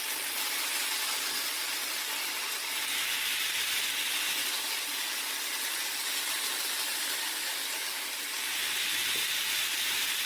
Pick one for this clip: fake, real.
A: real